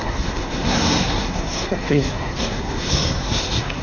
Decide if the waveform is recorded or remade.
remade